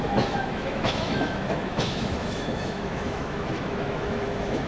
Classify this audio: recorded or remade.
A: remade